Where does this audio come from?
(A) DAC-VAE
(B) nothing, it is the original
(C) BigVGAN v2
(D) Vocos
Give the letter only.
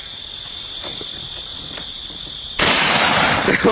C